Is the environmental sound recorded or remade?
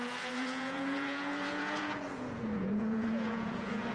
remade